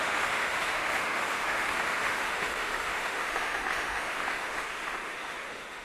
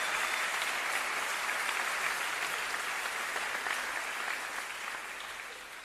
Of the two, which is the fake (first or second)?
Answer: first